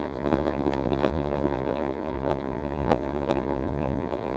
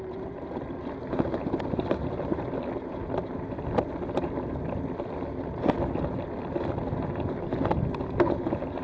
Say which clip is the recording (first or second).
second